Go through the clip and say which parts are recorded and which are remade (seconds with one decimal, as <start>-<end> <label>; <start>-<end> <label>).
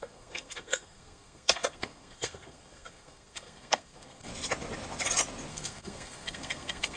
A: 0.0-4.3 remade; 4.3-5.5 recorded; 5.5-7.0 remade